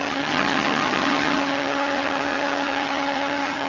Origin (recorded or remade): remade